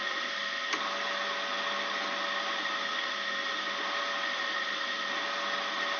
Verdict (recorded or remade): recorded